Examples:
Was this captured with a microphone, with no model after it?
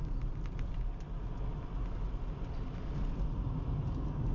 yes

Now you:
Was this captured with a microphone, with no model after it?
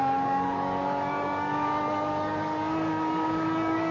no